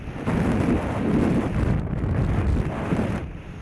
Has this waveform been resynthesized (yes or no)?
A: yes